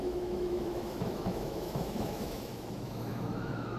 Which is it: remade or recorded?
remade